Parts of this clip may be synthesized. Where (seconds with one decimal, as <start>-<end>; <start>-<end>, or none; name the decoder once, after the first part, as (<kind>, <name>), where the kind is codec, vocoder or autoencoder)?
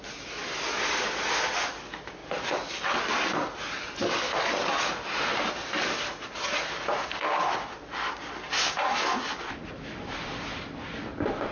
none